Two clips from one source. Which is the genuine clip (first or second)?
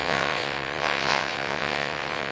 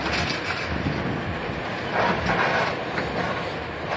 second